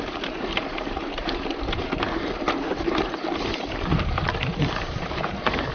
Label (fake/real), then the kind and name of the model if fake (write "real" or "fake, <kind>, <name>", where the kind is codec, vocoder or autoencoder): fake, vocoder, BigVGAN v2